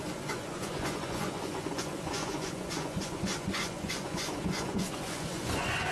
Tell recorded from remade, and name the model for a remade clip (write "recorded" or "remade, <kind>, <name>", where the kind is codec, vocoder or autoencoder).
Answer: remade, vocoder, Vocos